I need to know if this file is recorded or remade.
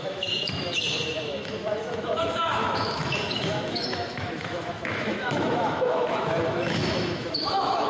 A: remade